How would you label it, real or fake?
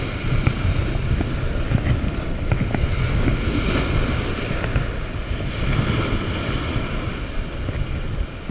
real